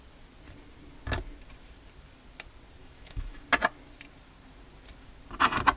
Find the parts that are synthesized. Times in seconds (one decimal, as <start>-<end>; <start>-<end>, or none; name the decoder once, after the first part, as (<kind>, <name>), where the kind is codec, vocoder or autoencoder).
2.8-3.4 (autoencoder, DAC-VAE)